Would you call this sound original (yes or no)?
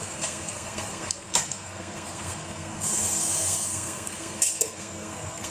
no